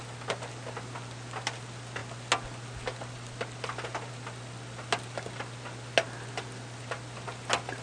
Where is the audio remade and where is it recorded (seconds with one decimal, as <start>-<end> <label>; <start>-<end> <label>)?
0.0-7.8 recorded